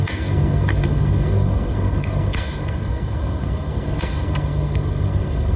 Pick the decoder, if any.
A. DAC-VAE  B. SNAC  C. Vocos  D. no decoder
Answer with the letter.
B